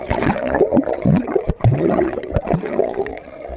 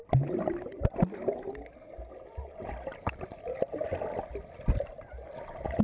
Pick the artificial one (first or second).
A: first